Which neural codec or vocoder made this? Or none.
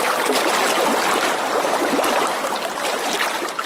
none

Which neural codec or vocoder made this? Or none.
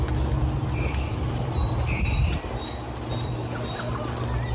none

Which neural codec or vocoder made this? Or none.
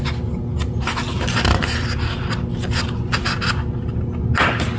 none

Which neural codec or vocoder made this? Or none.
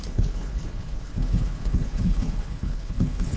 codec, HILCodec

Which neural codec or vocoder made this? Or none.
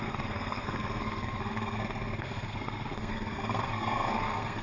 codec, SNAC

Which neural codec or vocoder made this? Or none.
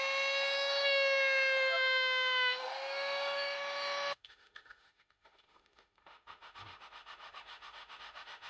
autoencoder, DAC-VAE